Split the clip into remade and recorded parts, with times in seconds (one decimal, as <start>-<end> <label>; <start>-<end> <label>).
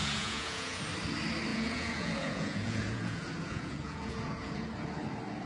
0.0-0.8 remade; 0.8-1.5 recorded; 1.5-4.5 remade; 4.5-5.5 recorded